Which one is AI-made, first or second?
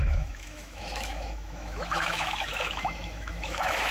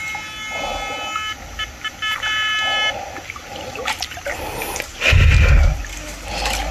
first